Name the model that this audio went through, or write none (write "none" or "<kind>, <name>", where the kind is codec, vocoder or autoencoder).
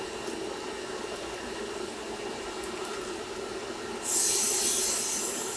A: none